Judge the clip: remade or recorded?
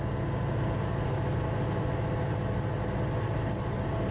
recorded